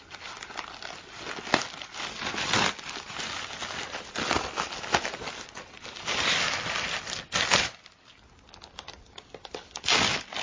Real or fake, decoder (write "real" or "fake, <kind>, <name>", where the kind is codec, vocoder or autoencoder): real